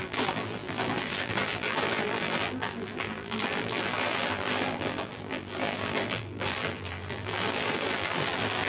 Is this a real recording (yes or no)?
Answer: no